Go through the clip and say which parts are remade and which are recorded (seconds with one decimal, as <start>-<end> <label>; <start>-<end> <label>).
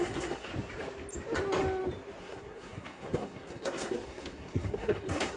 0.0-0.5 remade; 0.5-2.2 recorded; 2.2-5.4 remade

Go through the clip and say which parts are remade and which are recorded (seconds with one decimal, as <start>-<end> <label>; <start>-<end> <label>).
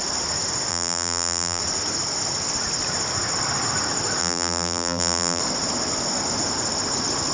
0.0-0.7 recorded; 0.7-1.6 remade; 1.6-4.2 recorded; 4.2-5.4 remade; 5.4-7.3 recorded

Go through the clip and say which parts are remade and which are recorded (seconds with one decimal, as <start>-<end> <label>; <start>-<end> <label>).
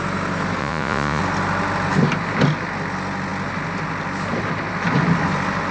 0.0-0.6 recorded; 0.6-1.2 remade; 1.2-5.7 recorded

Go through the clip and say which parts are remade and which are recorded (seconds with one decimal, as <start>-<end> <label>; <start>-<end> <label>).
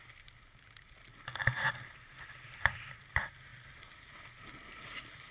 0.0-5.3 recorded